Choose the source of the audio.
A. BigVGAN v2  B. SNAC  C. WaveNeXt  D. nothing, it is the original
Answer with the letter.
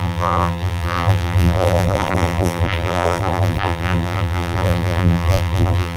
A